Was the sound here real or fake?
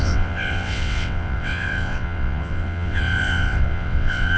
fake